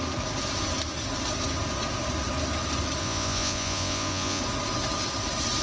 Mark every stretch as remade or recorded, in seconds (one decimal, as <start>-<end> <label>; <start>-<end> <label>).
0.0-3.0 recorded; 3.0-4.4 remade; 4.4-5.6 recorded